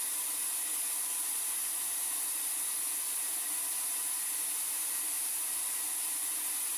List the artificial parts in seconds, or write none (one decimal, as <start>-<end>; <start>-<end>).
none